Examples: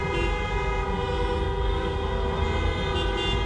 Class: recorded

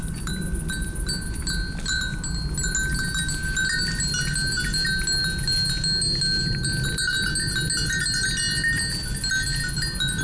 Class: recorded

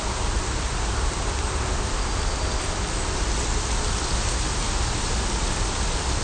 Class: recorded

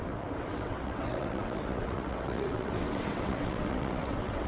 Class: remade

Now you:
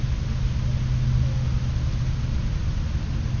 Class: recorded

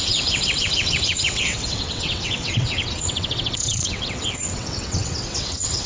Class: remade